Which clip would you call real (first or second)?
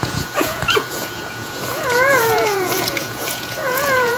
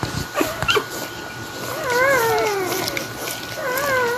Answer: second